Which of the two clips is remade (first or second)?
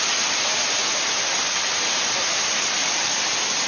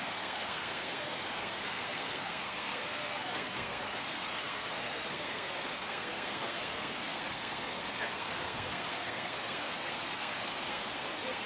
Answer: second